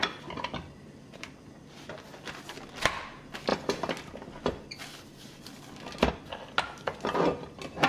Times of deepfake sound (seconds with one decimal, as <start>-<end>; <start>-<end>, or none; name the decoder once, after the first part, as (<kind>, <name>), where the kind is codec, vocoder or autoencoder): 0.0-1.1 (vocoder, BigVGAN v2)